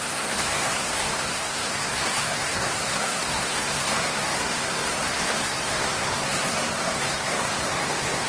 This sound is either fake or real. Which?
fake